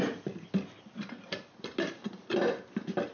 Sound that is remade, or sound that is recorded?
recorded